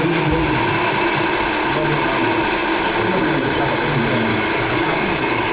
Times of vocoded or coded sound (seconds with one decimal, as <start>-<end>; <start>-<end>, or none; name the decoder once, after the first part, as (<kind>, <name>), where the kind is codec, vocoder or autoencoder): 4.3-5.5 (codec, DAC)